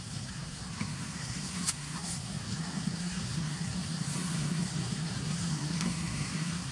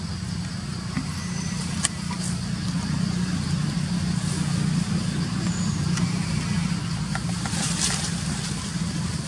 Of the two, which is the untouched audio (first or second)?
second